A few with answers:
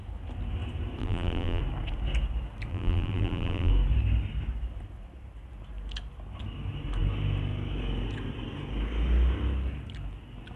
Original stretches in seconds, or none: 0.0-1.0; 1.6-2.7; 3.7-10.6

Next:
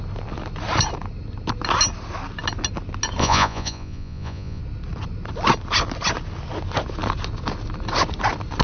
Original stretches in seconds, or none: 0.0-3.2; 4.6-8.6

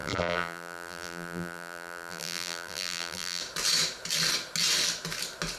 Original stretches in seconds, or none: 3.4-5.6